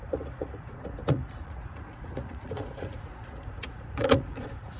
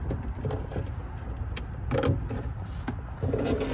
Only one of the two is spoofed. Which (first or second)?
first